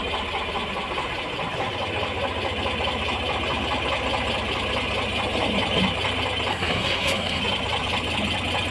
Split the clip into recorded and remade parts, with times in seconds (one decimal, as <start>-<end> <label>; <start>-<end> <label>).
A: 0.0-6.5 recorded; 6.5-7.4 remade; 7.4-8.7 recorded